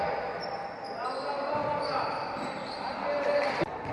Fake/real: real